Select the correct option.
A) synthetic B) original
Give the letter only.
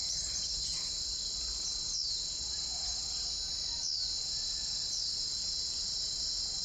B